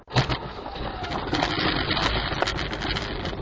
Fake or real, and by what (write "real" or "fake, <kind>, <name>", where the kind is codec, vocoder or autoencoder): real